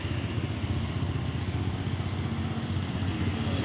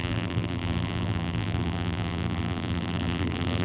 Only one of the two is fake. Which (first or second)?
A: second